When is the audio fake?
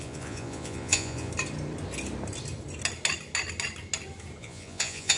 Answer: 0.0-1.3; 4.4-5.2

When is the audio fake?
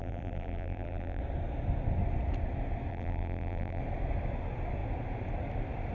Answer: 0.0-1.2; 2.9-3.8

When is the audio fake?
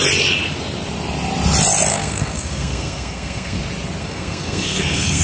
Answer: 1.9-3.6; 4.0-5.2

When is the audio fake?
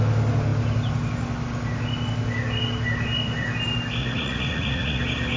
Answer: 4.0-5.0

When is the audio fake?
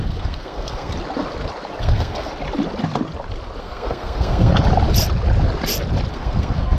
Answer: 0.0-0.9; 1.8-2.3; 3.6-4.5; 6.1-6.8